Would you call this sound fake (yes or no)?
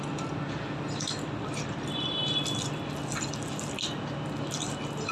no